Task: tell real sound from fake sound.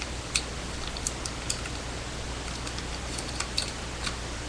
real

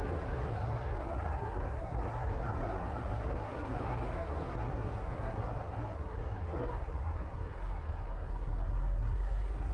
fake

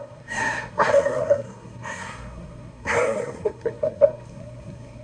fake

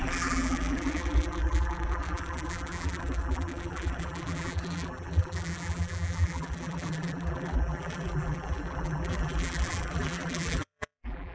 fake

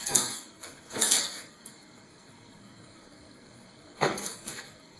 fake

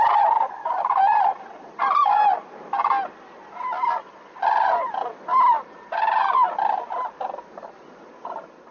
real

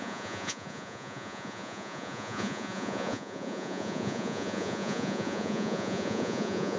fake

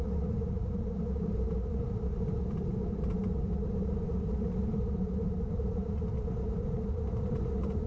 fake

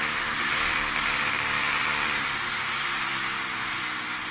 real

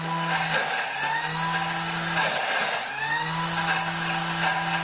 real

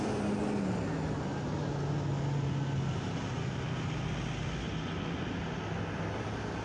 real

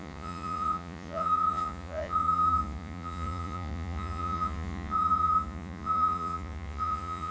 fake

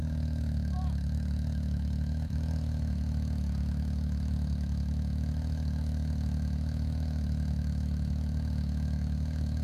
fake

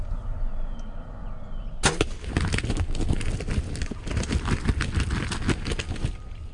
real